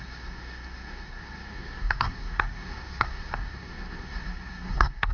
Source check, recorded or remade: remade